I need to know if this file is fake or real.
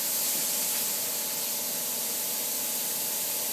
real